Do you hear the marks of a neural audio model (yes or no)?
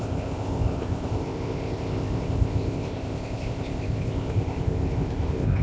yes